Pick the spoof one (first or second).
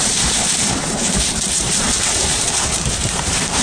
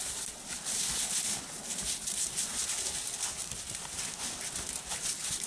first